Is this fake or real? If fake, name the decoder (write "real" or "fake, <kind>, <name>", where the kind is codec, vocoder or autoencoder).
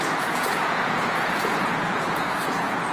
fake, vocoder, Vocos